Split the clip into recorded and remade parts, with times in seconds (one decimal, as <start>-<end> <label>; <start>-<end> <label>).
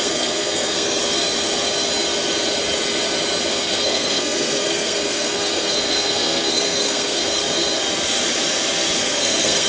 0.0-1.0 remade; 1.0-3.5 recorded; 3.5-7.4 remade; 7.4-9.0 recorded; 9.0-9.7 remade